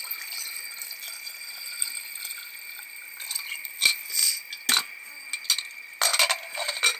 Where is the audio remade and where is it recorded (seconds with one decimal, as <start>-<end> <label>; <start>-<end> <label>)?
0.0-7.0 recorded